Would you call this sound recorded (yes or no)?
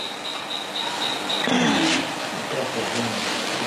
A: yes